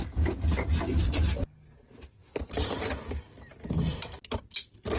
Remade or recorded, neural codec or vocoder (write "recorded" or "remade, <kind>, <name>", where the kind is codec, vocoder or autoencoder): recorded